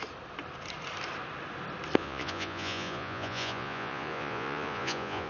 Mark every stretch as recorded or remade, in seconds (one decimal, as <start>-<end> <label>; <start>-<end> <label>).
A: 0.0-2.0 recorded; 2.0-5.3 remade